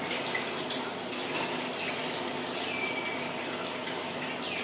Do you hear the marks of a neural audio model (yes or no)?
no